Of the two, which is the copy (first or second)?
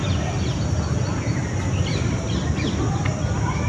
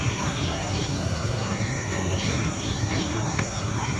second